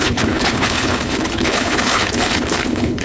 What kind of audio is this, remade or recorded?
remade